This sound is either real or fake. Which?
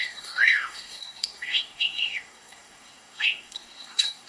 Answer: fake